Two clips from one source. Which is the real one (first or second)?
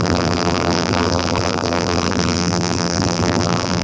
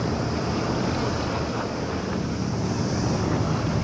second